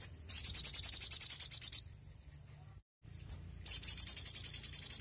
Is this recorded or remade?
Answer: recorded